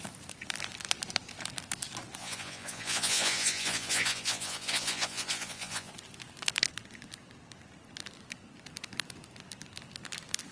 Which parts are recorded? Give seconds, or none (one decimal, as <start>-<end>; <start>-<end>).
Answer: 0.0-2.2; 5.9-10.5